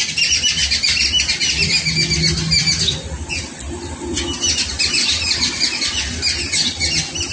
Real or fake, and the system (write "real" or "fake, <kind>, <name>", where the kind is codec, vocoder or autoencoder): real